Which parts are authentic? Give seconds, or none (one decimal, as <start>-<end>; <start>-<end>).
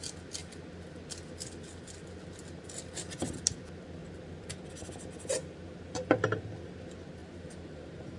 0.0-7.2